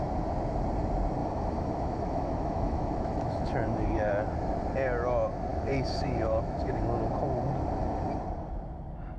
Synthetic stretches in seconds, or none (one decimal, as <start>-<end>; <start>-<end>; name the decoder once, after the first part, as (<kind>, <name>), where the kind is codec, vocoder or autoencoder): 1.2-4.1 (autoencoder, DAC-VAE); 5.5-6.8